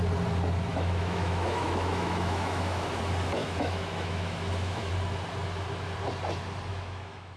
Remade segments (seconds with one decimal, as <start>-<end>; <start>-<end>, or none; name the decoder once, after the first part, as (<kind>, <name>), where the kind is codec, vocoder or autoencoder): 0.7-3.0 (autoencoder, DAC-VAE); 3.4-4.9; 6.7-7.4